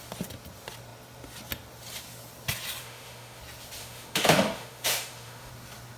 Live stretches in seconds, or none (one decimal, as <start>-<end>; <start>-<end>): 0.0-2.8; 3.4-3.8; 5.5-6.0